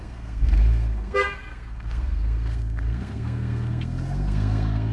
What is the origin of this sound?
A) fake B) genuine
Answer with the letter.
A